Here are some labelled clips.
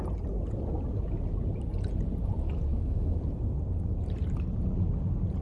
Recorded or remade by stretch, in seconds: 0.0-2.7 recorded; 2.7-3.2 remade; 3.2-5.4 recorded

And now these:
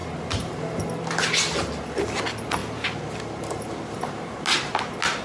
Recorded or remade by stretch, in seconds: 0.0-5.2 recorded

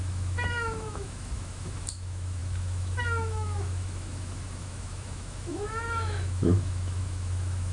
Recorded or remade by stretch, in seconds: 0.0-7.7 remade

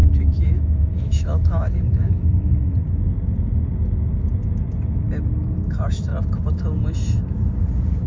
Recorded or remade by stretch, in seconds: 0.0-2.5 remade; 2.5-5.6 recorded; 5.6-6.1 remade; 6.1-8.1 recorded

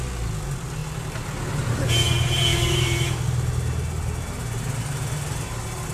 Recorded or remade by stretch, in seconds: 0.0-2.5 recorded; 2.5-3.2 remade; 3.2-5.9 recorded